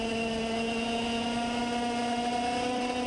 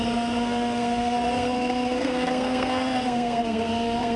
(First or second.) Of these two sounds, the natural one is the first